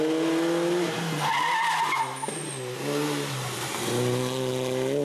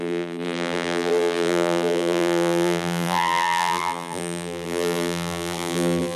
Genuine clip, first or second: first